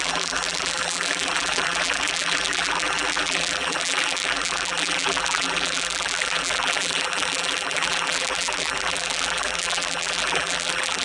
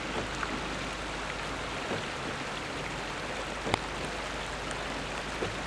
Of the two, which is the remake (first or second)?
first